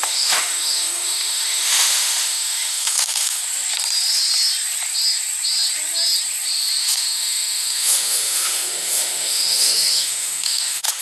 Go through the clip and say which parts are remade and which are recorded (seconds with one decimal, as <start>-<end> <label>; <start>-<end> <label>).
0.0-3.4 remade; 3.4-6.8 recorded; 6.8-11.0 remade